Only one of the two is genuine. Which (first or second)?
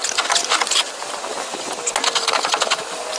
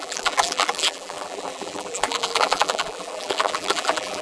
first